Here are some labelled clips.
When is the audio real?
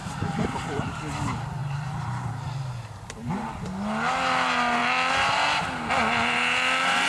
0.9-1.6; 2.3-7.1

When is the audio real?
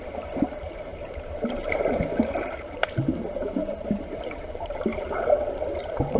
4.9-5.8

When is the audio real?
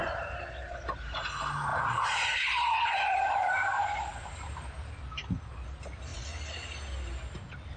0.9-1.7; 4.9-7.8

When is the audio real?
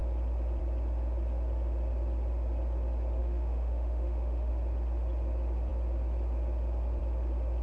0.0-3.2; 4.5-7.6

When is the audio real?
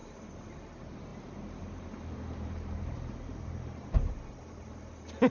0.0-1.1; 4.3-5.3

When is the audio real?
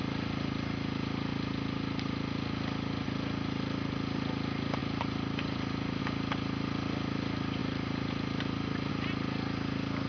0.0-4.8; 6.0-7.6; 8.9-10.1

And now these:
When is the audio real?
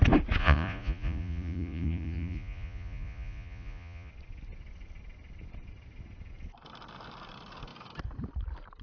0.0-0.4; 4.1-8.8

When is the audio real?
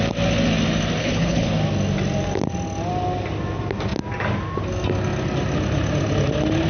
0.0-1.0; 1.5-6.7